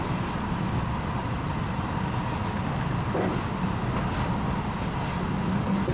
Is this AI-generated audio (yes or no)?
no